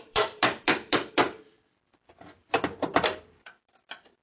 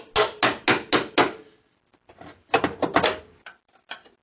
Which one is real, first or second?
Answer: second